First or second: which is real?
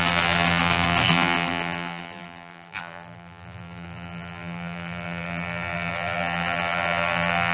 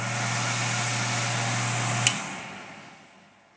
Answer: second